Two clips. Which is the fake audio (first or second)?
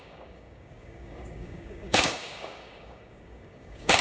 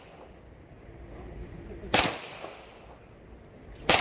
first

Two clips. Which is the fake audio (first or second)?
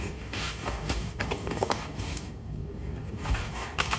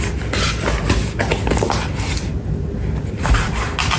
first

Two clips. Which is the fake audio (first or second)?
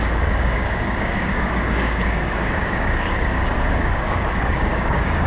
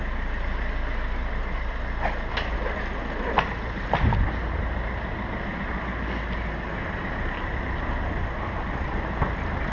first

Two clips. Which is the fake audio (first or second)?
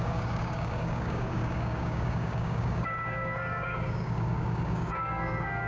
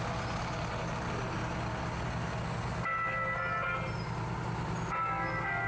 first